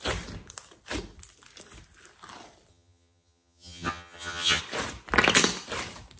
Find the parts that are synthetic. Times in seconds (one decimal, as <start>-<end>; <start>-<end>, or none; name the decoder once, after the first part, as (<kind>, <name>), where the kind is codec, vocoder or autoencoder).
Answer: 2.7-4.6 (vocoder, HiFi-GAN)